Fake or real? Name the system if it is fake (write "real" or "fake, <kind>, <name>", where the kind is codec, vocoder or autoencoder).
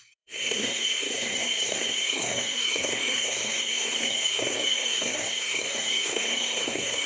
fake, codec, SNAC